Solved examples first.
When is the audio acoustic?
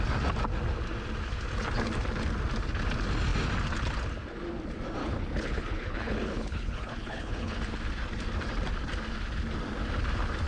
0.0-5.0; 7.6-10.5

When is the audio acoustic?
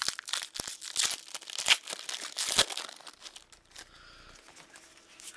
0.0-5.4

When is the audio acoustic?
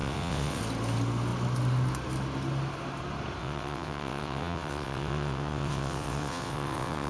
0.6-3.4